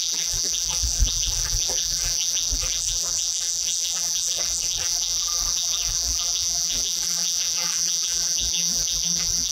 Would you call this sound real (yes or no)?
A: no